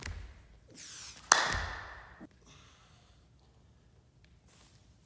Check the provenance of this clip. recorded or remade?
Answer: recorded